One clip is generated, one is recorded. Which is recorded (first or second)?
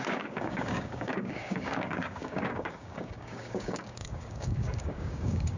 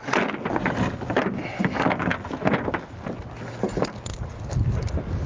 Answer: second